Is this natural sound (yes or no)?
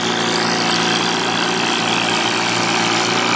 yes